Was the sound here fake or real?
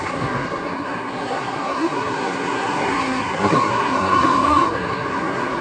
fake